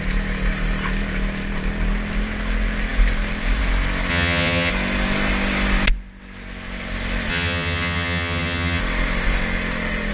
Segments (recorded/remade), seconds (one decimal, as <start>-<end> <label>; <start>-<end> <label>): 0.0-4.1 recorded; 4.1-4.7 remade; 4.7-7.3 recorded; 7.3-8.8 remade; 8.8-10.1 recorded